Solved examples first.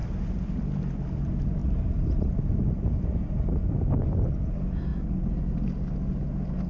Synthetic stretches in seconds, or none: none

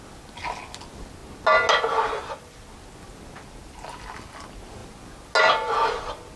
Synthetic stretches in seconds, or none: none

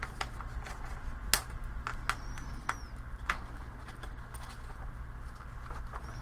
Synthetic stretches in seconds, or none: none